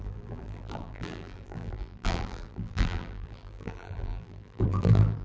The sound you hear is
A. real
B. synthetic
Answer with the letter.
B